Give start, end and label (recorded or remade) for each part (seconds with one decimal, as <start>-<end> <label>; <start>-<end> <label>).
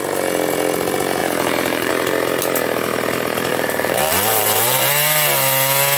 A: 0.0-1.2 recorded; 1.2-1.9 remade; 1.9-3.5 recorded; 3.5-4.9 remade; 4.9-6.0 recorded